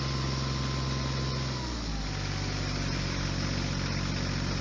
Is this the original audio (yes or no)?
yes